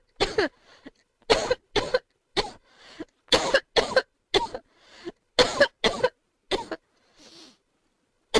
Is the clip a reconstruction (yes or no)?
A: no